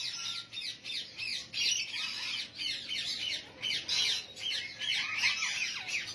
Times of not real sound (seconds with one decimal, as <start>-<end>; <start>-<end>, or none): none